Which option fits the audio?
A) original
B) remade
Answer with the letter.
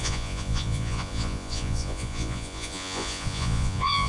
B